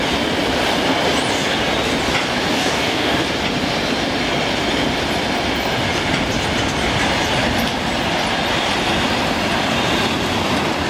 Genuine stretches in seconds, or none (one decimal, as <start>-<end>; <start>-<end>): 0.0-2.5; 3.2-10.9